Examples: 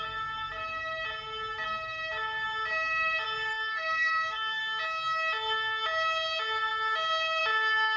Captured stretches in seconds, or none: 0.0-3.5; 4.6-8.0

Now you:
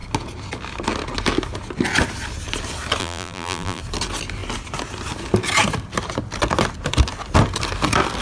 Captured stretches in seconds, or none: 0.0-3.0; 3.8-8.2